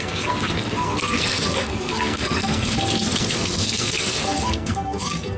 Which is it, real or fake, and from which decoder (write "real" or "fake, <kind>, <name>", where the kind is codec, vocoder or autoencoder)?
fake, codec, SNAC